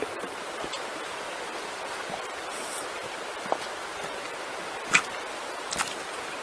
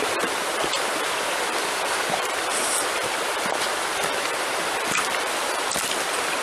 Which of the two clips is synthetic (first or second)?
second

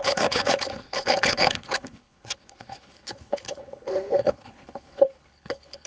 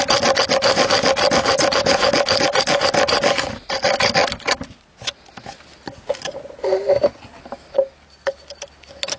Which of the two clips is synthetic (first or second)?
first